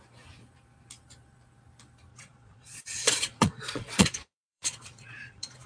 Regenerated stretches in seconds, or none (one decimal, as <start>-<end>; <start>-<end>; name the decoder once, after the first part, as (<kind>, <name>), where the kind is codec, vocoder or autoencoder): 2.1-5.7 (vocoder, Vocos)